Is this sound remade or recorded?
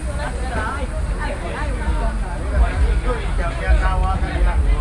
recorded